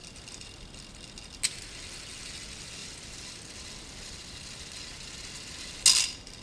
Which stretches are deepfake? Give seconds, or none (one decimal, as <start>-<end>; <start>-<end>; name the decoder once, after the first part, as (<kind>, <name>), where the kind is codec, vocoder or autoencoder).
0.0-0.7 (vocoder, BigVGAN v2); 2.8-3.4